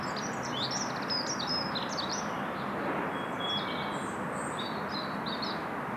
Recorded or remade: recorded